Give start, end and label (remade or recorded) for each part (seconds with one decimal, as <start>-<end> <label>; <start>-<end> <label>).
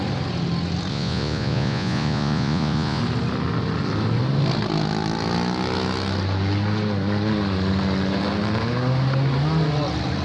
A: 0.0-0.9 recorded; 0.9-3.0 remade; 3.0-10.2 recorded